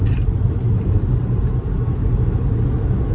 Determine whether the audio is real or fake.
real